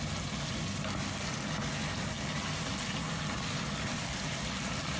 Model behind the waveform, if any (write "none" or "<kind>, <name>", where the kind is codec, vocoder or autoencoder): none